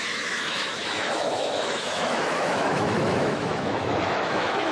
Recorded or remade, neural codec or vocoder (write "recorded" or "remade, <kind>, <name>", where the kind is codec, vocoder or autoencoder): remade, autoencoder, DAC-VAE